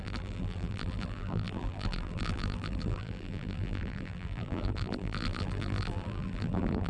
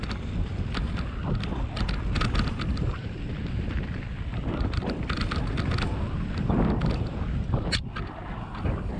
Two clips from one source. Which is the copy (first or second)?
first